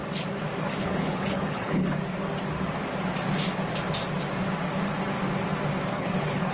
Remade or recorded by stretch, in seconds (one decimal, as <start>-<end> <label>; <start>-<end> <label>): 0.0-0.6 recorded; 0.6-2.0 remade; 2.0-5.9 recorded; 5.9-6.5 remade